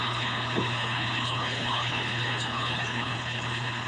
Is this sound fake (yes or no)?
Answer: yes